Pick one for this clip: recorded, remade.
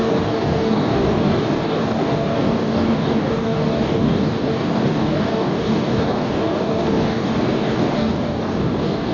remade